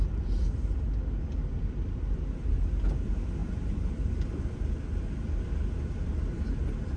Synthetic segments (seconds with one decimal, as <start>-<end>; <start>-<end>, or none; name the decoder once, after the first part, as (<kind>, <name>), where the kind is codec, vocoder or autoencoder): none